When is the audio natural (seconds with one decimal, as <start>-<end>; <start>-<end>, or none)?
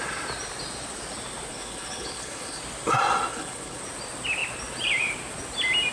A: 0.0-1.5; 2.6-3.3; 3.8-5.9